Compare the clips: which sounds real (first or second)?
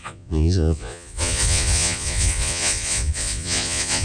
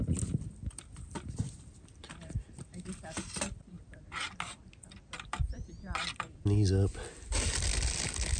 second